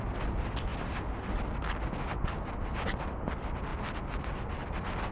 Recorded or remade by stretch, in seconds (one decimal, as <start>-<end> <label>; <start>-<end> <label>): 0.0-5.1 recorded